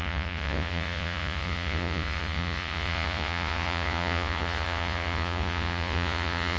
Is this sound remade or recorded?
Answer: remade